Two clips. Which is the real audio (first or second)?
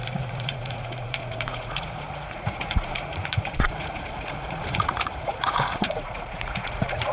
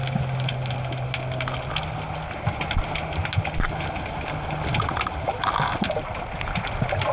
second